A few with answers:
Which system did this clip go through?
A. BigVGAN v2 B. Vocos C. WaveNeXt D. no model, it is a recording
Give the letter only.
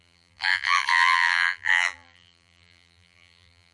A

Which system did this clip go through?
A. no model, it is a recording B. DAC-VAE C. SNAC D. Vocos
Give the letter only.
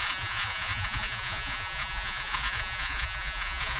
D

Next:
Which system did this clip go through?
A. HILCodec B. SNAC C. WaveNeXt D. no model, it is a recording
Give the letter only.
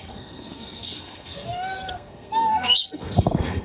B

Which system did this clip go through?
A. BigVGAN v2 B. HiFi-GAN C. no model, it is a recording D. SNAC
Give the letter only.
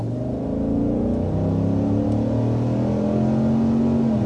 C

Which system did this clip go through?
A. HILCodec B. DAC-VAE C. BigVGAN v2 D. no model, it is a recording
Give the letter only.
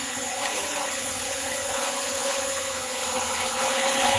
A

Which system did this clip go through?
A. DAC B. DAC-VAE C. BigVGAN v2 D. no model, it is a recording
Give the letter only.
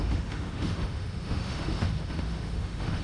B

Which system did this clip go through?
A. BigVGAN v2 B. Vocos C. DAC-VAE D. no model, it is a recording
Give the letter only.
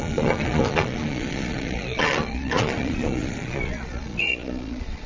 B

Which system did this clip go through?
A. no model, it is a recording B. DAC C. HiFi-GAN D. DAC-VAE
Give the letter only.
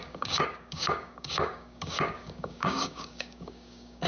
B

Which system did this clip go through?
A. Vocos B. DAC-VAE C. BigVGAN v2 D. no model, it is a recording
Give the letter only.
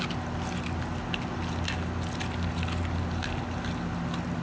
D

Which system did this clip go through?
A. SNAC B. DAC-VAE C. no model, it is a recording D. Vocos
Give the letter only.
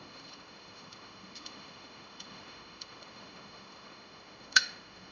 B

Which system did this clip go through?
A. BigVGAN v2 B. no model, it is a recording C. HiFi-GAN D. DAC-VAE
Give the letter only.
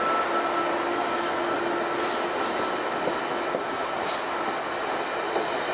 B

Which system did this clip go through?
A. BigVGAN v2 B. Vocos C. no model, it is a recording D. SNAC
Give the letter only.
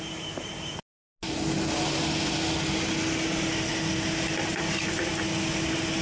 C